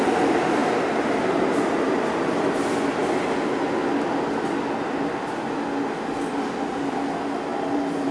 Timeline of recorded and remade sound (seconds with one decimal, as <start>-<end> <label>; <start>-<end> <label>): 0.0-7.5 recorded; 7.5-8.1 remade